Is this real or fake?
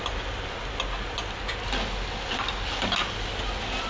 real